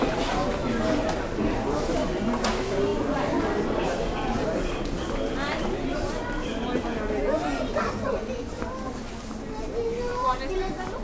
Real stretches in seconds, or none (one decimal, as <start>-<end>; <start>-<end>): 0.0-2.9; 6.1-11.0